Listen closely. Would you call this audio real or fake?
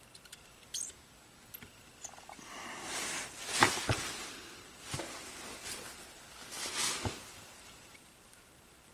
real